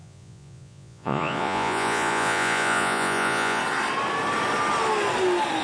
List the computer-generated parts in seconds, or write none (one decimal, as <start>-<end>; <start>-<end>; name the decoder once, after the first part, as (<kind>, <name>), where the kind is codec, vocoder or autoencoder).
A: 0.0-3.6 (vocoder, Vocos)